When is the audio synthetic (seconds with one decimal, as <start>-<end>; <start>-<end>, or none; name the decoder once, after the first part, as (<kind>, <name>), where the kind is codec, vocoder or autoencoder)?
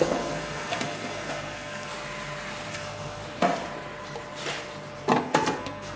0.0-1.9 (codec, SNAC); 2.7-3.2; 5.2-6.0